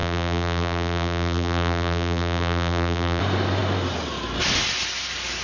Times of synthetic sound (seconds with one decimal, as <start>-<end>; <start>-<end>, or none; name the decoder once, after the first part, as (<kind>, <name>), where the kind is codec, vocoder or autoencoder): 0.0-3.2 (vocoder, BigVGAN v2)